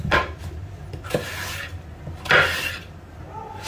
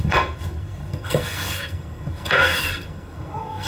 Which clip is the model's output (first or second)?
second